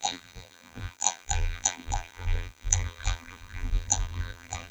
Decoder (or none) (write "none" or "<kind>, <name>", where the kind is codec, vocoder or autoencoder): vocoder, BigVGAN v2